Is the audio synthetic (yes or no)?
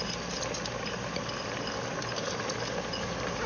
no